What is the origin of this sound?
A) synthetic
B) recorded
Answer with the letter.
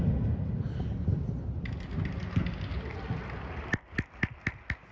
B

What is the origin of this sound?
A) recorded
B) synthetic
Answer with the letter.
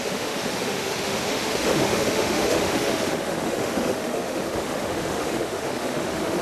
B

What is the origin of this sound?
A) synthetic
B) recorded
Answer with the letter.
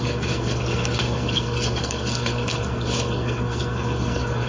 A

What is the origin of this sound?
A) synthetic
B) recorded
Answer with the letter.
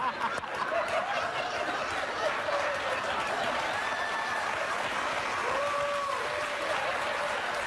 B